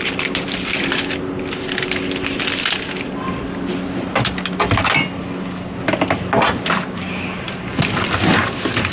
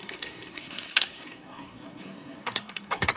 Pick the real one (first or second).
first